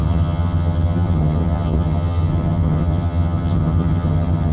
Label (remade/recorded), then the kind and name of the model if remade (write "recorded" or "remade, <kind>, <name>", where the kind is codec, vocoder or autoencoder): remade, vocoder, HiFi-GAN